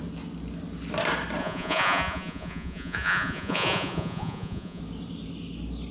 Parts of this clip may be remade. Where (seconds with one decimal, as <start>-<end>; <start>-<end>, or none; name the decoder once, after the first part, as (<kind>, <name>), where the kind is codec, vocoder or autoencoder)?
1.4-4.8 (vocoder, Vocos)